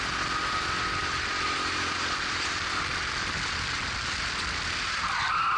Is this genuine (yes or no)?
yes